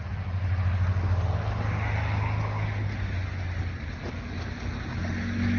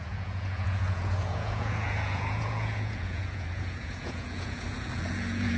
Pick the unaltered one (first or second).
first